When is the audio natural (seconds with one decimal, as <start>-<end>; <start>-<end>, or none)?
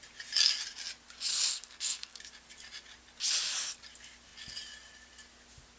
0.0-1.5; 2.2-5.8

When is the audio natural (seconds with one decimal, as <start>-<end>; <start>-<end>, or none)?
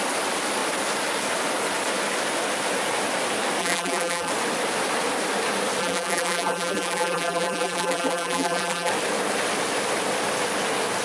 0.0-3.6; 4.3-5.8; 8.9-11.0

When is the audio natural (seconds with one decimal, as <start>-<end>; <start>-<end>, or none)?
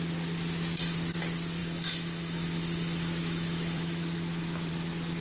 0.0-1.6; 4.7-5.2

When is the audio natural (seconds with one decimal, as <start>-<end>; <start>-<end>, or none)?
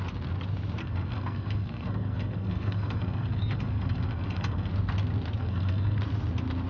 0.0-0.8; 4.7-5.4; 6.0-6.7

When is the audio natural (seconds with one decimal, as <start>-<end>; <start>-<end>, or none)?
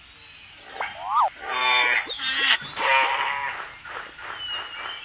0.0-5.0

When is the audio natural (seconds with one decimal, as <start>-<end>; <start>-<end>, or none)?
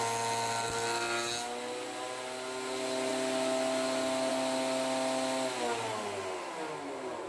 0.0-7.3